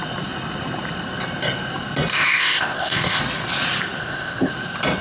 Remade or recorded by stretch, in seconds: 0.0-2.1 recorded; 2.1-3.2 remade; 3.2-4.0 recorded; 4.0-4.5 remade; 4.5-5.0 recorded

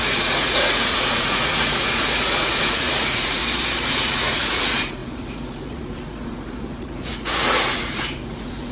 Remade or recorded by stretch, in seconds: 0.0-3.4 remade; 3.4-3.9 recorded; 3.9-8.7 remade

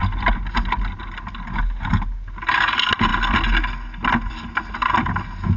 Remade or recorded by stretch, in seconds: 0.0-5.6 recorded

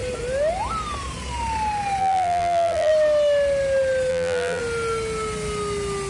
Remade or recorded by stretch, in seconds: 0.0-2.0 recorded; 2.0-2.9 remade; 2.9-4.1 recorded; 4.1-4.6 remade; 4.6-6.1 recorded

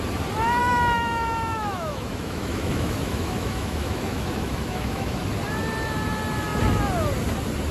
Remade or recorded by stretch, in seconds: 0.0-0.6 recorded; 0.6-5.2 remade; 5.2-7.7 recorded

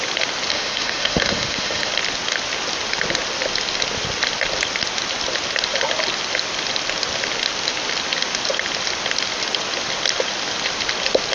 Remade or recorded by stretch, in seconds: 0.0-0.5 recorded; 0.5-1.9 remade; 1.9-11.3 recorded

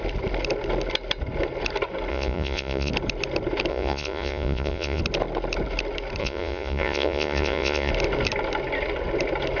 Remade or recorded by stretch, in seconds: 0.0-2.1 recorded; 2.1-2.9 remade; 2.9-3.7 recorded; 3.7-5.0 remade; 5.0-6.2 recorded; 6.2-7.9 remade; 7.9-9.6 recorded

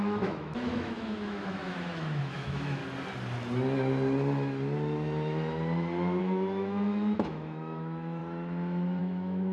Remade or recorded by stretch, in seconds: 0.0-2.8 remade; 2.8-6.2 recorded; 6.2-8.2 remade; 8.2-9.0 recorded; 9.0-9.5 remade